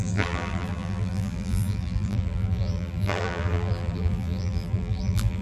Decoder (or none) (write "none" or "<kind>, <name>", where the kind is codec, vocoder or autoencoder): vocoder, BigVGAN v2